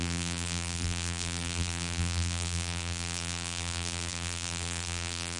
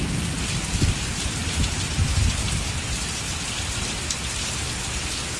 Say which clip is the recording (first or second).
second